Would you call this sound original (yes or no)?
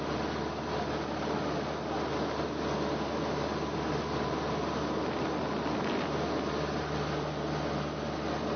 yes